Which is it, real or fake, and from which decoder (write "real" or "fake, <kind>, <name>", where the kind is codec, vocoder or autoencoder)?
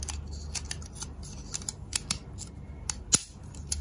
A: real